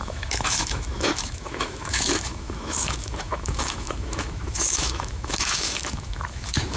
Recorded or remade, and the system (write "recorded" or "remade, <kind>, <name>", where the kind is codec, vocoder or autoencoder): remade, autoencoder, DAC-VAE